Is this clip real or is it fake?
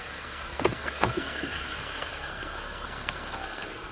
fake